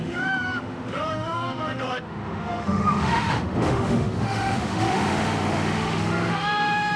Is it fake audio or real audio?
fake